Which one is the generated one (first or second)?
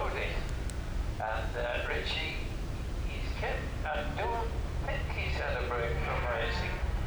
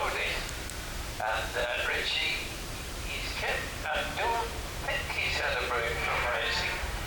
second